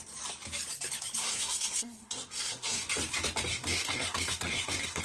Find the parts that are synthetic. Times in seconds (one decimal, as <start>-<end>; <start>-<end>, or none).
1.2-2.9; 3.5-5.0

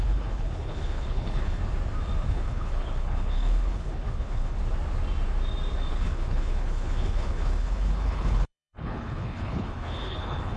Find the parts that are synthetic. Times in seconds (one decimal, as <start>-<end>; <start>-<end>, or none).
0.0-1.6; 2.3-4.6; 5.9-10.6

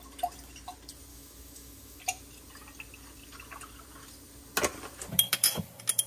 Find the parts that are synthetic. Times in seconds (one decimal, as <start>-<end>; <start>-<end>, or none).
1.1-2.0

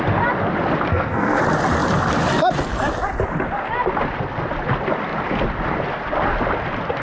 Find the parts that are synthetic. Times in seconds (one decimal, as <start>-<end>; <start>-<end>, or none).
0.9-1.4

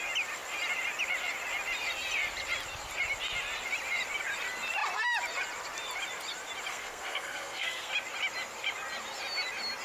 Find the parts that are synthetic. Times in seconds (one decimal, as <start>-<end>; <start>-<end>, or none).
6.7-7.9

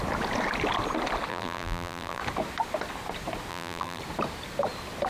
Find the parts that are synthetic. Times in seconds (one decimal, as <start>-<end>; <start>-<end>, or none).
1.3-2.2; 3.5-4.0

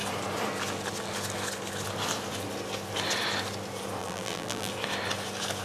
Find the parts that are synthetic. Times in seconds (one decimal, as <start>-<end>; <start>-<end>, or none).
4.0-4.7

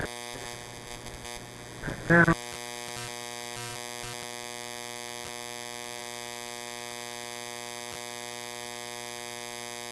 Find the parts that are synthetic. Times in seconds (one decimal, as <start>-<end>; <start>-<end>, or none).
none